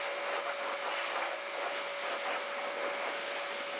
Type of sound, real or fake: real